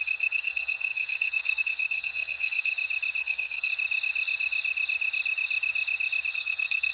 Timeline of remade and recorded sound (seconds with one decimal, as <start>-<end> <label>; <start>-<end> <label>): 0.0-2.7 remade; 2.7-3.2 recorded; 3.2-3.7 remade; 3.7-6.3 recorded; 6.3-6.9 remade